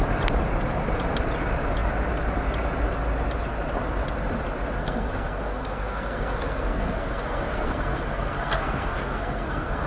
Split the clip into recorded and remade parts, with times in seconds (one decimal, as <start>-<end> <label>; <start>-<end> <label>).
0.0-4.8 recorded; 4.8-9.9 remade

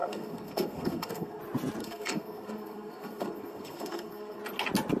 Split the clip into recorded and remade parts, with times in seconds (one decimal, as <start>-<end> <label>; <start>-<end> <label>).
0.0-1.4 remade; 1.4-1.8 recorded; 1.8-4.4 remade; 4.4-5.0 recorded

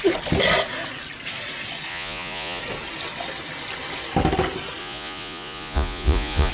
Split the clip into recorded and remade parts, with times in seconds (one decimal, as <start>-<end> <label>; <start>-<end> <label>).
0.0-1.9 recorded; 1.9-2.6 remade; 2.6-4.8 recorded; 4.8-6.5 remade

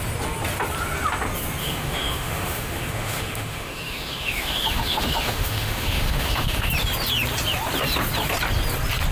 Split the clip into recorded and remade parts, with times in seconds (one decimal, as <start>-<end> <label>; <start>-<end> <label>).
0.0-1.6 recorded; 1.6-6.7 remade; 6.7-9.1 recorded

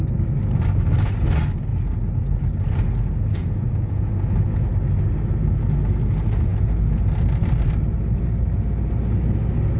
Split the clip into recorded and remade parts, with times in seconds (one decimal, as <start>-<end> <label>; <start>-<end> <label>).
0.0-3.4 recorded; 3.4-4.1 remade; 4.1-9.8 recorded

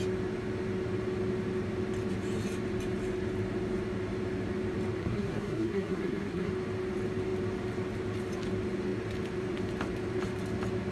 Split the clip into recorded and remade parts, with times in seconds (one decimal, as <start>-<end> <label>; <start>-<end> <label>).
0.0-5.0 recorded; 5.0-6.5 remade; 6.5-10.9 recorded